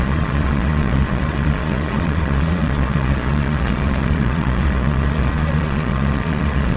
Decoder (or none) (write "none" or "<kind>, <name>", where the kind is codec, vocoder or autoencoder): vocoder, Vocos